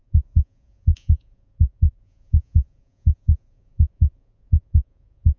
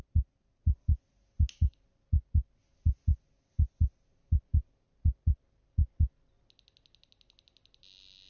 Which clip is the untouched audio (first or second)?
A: second